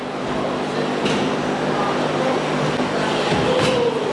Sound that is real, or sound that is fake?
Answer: real